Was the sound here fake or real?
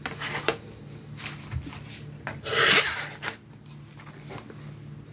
real